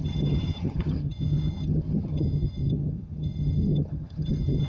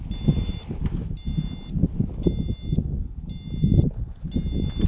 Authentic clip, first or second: second